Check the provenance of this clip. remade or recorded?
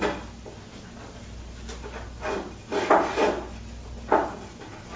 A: recorded